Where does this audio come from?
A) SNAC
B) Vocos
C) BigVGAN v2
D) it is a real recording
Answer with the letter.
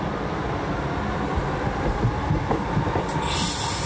D